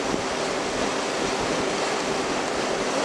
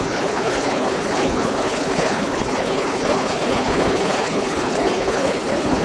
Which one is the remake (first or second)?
second